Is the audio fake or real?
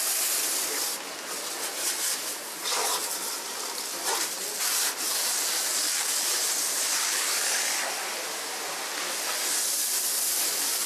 real